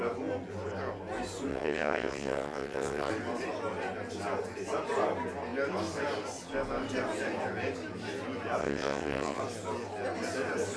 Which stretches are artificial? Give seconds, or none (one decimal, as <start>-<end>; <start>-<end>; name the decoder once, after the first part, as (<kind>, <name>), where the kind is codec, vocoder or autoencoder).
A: 1.5-3.1 (vocoder, WaveNeXt); 8.6-9.4